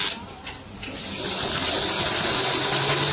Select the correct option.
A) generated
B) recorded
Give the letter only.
B